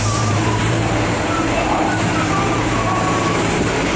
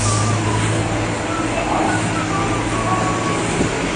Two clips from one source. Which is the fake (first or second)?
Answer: first